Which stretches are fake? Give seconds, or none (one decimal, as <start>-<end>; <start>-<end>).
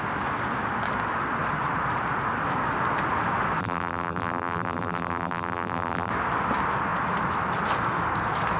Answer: 3.6-6.1